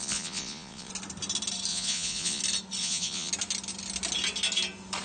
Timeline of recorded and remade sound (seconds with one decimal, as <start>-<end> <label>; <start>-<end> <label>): 0.0-0.9 remade; 0.9-1.7 recorded; 1.7-2.4 remade; 2.4-2.8 recorded; 2.8-3.3 remade; 3.3-5.0 recorded